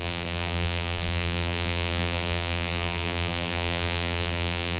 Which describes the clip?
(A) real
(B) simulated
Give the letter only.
B